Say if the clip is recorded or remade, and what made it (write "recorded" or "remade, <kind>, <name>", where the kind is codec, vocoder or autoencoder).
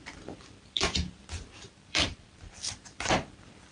remade, vocoder, BigVGAN v2